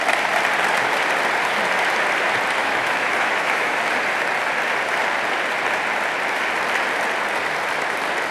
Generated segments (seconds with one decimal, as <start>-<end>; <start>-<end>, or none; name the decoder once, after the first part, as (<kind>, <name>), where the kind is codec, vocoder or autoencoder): 2.6-3.8 (autoencoder, DAC-VAE)